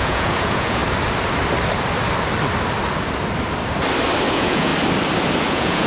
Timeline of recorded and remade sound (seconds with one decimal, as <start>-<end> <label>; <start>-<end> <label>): 0.0-0.8 remade; 0.8-4.3 recorded; 4.3-4.7 remade; 4.7-5.4 recorded; 5.4-5.9 remade